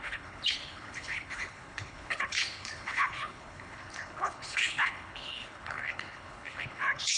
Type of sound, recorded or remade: remade